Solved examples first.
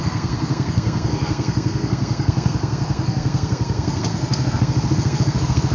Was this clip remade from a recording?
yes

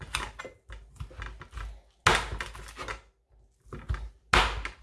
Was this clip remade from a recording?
no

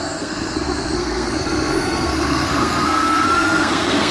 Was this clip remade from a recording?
yes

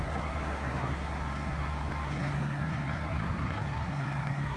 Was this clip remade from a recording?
yes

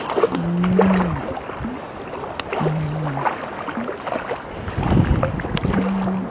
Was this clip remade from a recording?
no